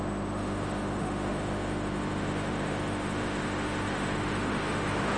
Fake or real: fake